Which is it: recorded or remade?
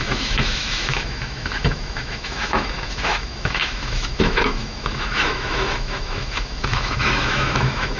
remade